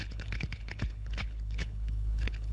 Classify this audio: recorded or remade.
remade